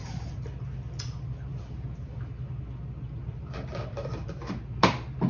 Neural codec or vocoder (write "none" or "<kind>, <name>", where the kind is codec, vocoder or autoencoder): none